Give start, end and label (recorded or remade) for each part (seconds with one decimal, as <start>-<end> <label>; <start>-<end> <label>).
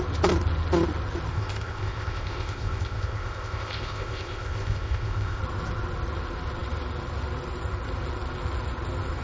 0.0-1.3 recorded; 1.3-5.4 remade; 5.4-9.2 recorded